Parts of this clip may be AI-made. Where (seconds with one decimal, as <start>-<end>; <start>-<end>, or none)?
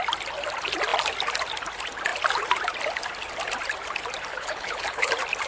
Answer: 4.3-5.1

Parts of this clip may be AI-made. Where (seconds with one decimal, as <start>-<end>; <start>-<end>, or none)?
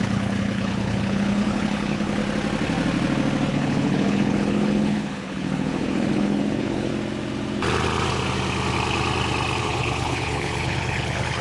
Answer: 0.0-2.2; 3.5-6.9; 9.6-11.4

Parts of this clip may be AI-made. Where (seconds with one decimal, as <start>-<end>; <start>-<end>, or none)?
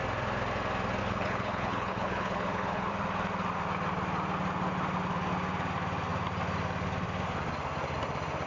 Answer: 1.0-2.9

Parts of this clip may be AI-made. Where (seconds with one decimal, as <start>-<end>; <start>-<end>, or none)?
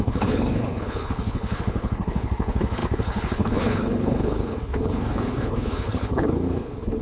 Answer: 0.0-7.0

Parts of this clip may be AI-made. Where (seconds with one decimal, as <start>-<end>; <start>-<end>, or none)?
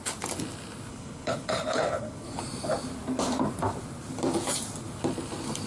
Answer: 0.9-2.4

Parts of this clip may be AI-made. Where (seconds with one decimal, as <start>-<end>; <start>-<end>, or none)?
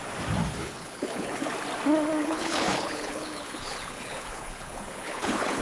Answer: 0.6-1.4; 2.2-5.6